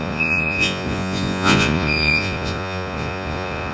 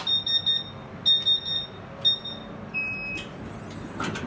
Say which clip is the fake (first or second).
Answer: first